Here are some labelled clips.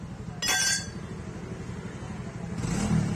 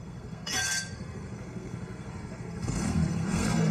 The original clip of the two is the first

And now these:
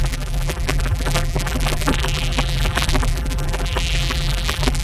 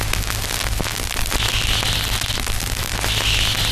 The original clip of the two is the second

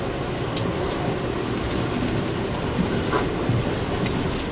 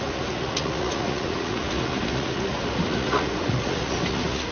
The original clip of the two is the first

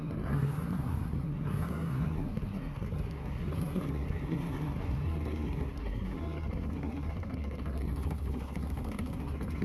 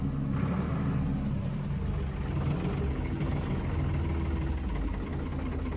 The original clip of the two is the second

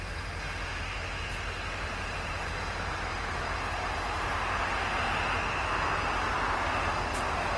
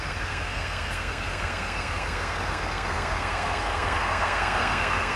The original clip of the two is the first